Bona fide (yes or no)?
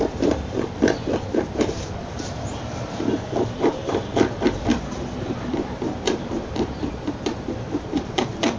no